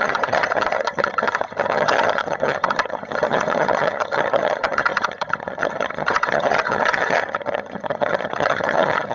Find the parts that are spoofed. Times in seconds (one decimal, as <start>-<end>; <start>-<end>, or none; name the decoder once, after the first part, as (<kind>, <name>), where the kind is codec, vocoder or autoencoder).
0.0-9.1 (vocoder, HiFi-GAN)